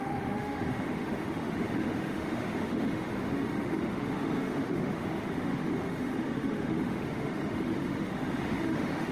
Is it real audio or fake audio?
fake